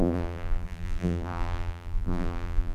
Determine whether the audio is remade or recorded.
remade